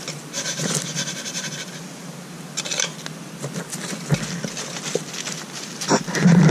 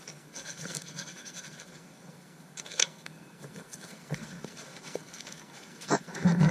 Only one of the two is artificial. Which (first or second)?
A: second